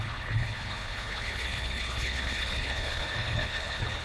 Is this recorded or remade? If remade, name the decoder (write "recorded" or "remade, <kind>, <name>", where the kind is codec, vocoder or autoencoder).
remade, codec, HILCodec